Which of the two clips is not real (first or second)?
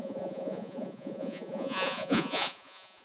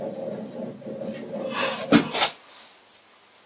first